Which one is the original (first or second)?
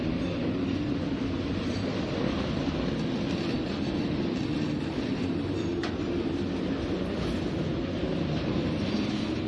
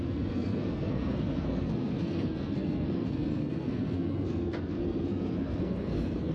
first